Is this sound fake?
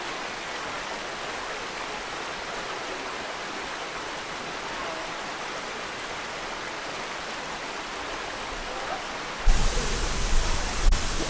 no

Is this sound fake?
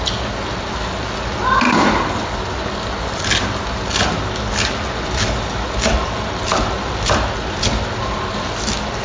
no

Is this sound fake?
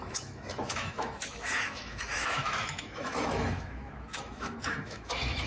yes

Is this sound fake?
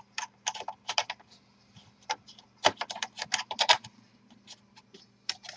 no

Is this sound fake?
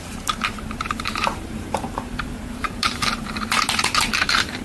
yes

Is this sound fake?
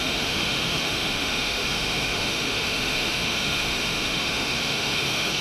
yes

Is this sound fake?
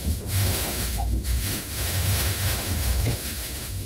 yes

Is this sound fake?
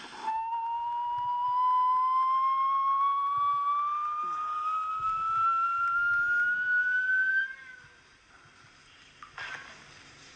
no